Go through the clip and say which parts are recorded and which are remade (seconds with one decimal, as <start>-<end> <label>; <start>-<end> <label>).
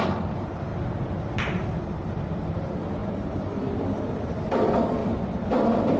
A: 0.0-0.7 remade; 0.7-1.2 recorded; 1.2-5.0 remade; 5.0-6.0 recorded